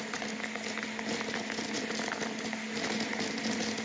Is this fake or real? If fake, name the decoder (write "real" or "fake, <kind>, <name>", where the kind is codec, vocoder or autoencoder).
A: real